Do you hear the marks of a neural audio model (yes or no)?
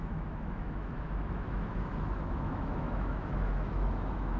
yes